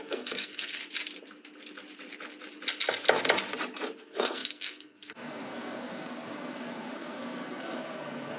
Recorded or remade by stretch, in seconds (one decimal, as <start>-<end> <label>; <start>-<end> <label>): 0.0-0.8 remade; 0.8-4.0 recorded; 4.0-8.4 remade